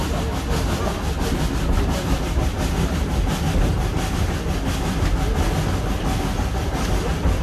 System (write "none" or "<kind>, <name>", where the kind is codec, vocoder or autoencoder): none